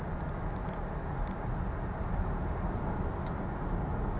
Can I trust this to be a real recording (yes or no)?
yes